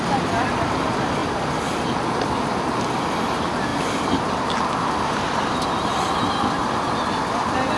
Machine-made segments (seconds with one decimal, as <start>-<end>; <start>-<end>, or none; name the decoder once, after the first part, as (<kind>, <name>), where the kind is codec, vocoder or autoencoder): 0.0-1.2 (vocoder, BigVGAN v2); 1.7-6.6; 7.1-7.8